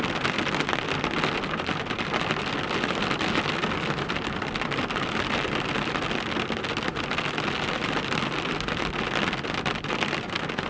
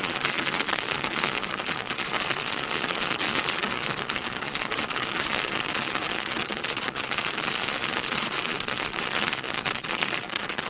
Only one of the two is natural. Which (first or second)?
first